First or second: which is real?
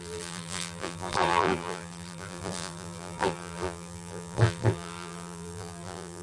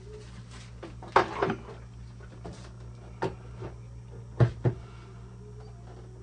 second